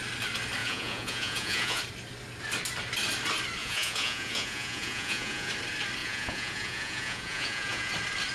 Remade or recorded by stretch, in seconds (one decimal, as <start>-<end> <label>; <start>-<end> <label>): 0.0-0.6 recorded; 0.6-1.8 remade; 1.8-3.6 recorded; 3.6-5.5 remade; 5.5-6.0 recorded; 6.0-7.9 remade; 7.9-8.3 recorded